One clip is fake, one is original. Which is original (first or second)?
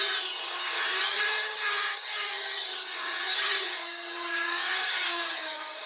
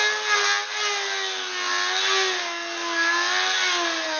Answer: second